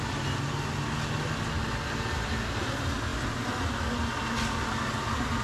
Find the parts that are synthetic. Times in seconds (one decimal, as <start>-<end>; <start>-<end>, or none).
none

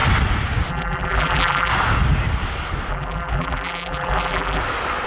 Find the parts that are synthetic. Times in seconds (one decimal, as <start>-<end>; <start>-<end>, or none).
0.7-1.7; 2.9-4.6

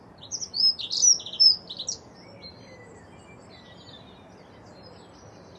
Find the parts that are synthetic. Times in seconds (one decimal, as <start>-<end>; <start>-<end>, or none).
0.0-1.4

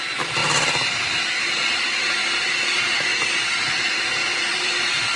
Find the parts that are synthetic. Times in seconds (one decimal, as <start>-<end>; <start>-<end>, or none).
2.2-3.2; 4.2-4.8

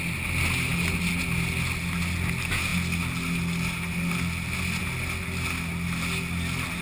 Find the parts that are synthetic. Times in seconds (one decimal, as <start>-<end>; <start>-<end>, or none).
none

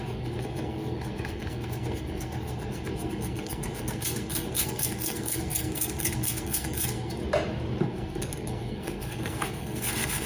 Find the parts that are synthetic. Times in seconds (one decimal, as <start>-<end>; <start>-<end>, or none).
0.0-7.2; 7.8-10.3

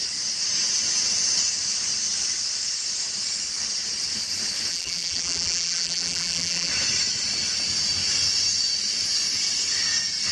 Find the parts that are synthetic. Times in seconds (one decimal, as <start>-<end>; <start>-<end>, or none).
4.7-6.7